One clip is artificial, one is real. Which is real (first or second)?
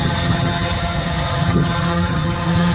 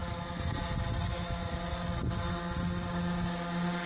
second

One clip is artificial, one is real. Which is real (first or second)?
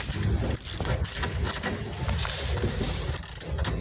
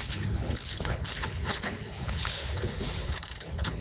first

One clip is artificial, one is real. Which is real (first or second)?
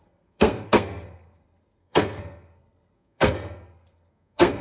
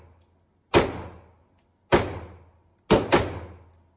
second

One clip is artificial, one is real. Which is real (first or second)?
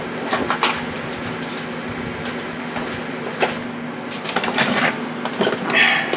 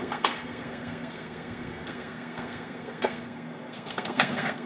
first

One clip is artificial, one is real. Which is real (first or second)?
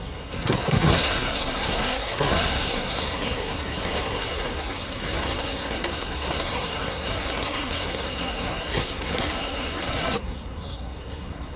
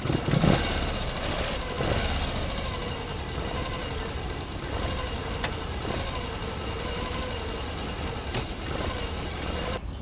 second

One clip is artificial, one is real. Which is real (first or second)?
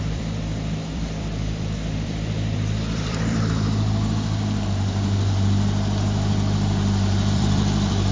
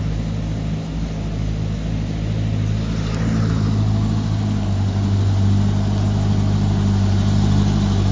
second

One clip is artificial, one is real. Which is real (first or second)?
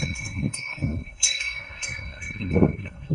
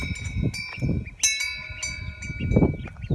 second